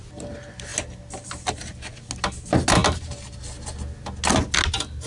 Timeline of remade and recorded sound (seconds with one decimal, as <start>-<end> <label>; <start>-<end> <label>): 0.0-5.1 recorded